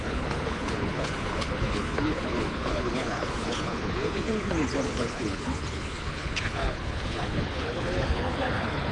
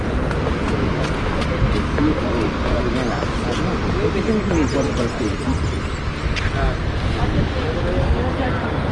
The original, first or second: second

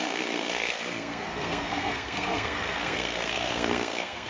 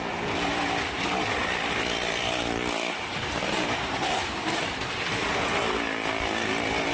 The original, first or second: second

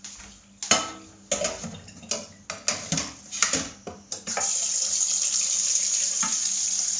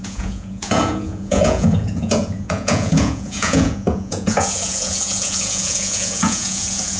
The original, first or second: first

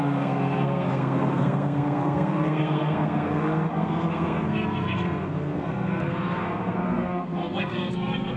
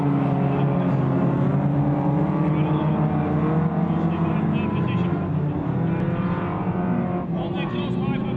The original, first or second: second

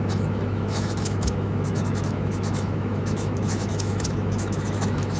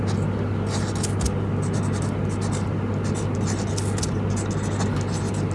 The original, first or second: second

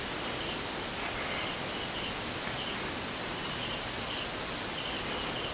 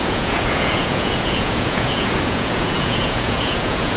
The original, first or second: first